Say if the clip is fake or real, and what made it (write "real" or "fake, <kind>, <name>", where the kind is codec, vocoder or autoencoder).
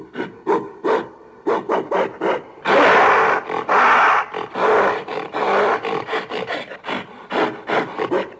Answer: real